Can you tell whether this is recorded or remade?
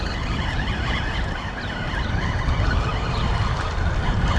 recorded